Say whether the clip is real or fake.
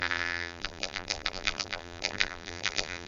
fake